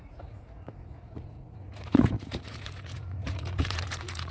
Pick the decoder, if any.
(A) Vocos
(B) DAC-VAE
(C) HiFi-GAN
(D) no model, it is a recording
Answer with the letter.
A